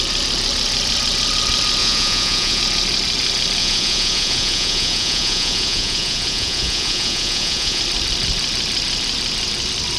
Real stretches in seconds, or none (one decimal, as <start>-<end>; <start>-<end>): 0.0-1.8; 2.6-3.6; 7.8-10.0